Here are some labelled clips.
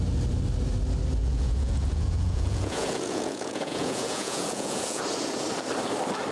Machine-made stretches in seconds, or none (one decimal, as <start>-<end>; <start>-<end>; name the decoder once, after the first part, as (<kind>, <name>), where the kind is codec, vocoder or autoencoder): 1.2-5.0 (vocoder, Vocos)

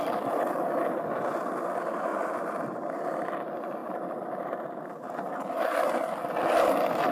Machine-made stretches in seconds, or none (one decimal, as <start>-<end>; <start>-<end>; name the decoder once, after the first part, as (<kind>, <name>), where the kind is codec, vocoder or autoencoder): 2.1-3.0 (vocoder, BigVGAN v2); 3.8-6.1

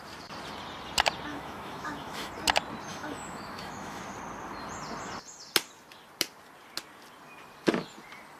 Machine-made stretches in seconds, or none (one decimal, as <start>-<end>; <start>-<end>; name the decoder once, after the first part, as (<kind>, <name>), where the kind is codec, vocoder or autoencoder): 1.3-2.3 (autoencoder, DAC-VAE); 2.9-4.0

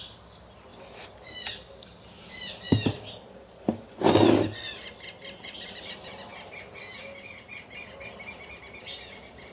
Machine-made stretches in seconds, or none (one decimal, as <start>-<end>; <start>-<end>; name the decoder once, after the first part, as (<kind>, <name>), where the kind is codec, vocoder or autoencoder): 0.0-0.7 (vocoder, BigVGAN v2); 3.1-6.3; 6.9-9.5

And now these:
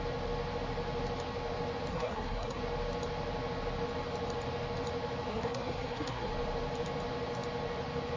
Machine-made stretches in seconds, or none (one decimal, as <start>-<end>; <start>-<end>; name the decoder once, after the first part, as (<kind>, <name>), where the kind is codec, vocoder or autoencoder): 1.9-2.6 (codec, SNAC); 5.3-6.3

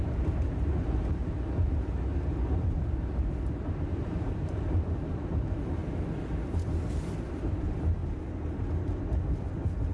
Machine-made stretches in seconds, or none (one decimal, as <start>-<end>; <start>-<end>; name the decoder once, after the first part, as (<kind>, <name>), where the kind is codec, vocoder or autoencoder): 0.0-5.8 (vocoder, BigVGAN v2); 6.9-8.0; 9.1-9.9

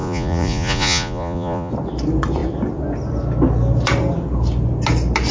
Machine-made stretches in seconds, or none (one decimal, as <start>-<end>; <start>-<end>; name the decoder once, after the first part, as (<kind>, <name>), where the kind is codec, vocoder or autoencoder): 0.0-1.7 (vocoder, Vocos)

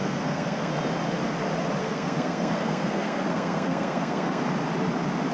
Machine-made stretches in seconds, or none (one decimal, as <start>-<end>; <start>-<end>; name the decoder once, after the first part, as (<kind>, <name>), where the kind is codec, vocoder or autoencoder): 0.0-0.7 (codec, SNAC); 1.8-4.4